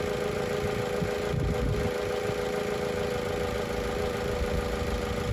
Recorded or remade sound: recorded